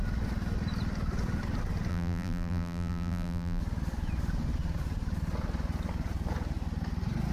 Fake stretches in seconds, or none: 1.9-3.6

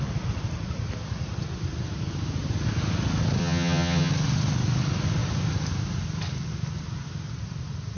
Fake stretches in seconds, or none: 3.4-4.1

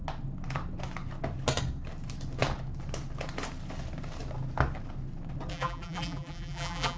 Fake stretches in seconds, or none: 5.5-7.0